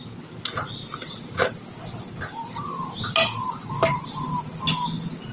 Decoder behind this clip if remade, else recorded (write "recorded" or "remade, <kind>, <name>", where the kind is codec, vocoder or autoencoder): recorded